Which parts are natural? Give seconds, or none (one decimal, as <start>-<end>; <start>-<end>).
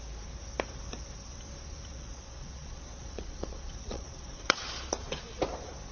0.0-1.9; 5.4-5.9